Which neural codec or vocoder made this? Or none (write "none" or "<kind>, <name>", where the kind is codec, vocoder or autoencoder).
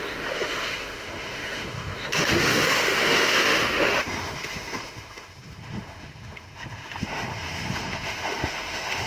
autoencoder, DAC-VAE